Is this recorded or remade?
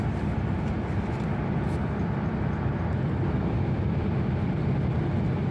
recorded